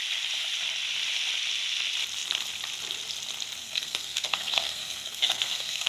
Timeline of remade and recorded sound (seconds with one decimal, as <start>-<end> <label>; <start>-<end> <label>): 0.0-3.6 recorded; 3.6-5.9 remade